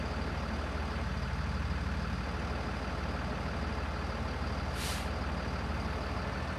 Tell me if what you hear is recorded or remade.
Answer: recorded